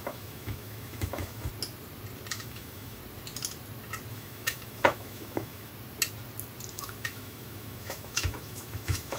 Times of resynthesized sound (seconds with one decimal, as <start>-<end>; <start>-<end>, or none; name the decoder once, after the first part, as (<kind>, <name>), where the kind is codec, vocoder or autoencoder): 0.0-1.5 (autoencoder, DAC-VAE); 2.3-3.0; 4.1-5.7; 6.7-9.2